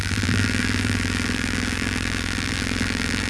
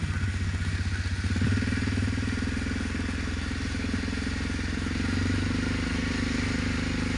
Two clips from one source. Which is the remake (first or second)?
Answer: first